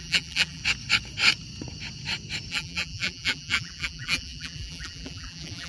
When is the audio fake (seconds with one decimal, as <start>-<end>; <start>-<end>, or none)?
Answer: 0.0-0.6; 2.5-5.7